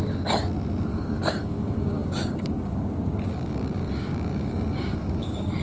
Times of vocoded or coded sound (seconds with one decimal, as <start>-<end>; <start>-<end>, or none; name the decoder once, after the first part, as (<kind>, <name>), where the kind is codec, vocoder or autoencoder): 1.4-5.6 (codec, DAC)